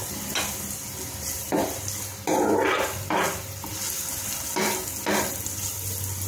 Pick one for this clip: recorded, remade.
recorded